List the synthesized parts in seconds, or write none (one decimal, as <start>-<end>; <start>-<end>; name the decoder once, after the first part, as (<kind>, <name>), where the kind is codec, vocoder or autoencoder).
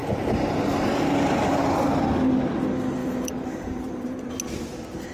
3.0-4.3 (vocoder, BigVGAN v2)